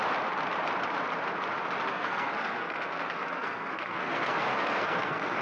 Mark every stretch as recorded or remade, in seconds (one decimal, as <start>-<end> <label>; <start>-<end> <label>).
0.0-1.9 recorded; 1.9-5.4 remade